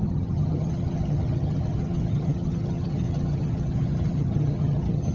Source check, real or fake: fake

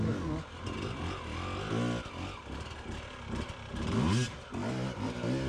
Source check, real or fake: real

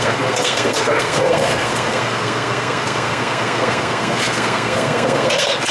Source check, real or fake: fake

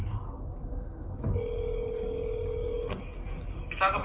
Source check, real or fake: fake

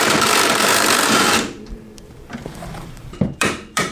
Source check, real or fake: fake